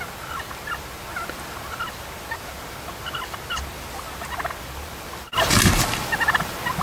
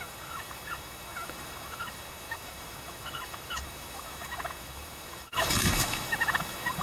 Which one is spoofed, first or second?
second